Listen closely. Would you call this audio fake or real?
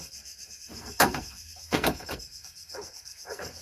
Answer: fake